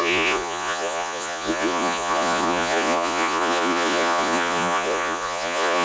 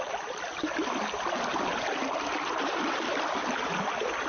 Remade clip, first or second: first